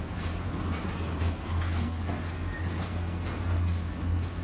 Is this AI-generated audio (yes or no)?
yes